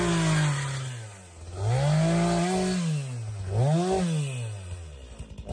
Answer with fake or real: real